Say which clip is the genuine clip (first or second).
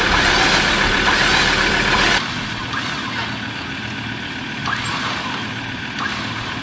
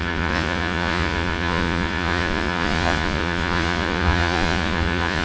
first